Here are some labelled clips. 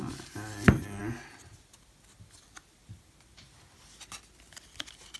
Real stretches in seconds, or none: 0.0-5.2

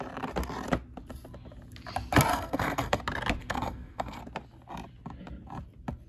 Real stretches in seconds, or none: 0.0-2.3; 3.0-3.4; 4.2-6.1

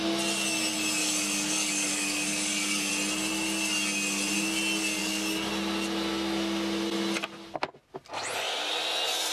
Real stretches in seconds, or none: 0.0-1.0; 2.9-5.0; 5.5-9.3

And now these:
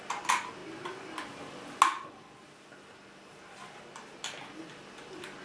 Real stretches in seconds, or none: 0.0-5.4